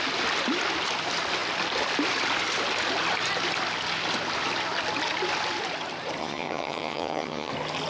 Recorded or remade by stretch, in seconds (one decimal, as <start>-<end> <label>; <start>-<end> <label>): 0.0-6.2 recorded; 6.2-7.5 remade; 7.5-7.9 recorded